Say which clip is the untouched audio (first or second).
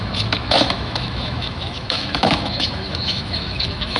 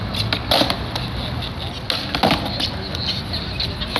second